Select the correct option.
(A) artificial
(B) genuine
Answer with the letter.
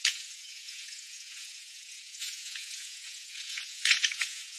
A